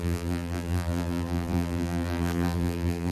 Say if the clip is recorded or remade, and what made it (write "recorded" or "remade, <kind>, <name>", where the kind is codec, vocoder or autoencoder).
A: remade, vocoder, BigVGAN v2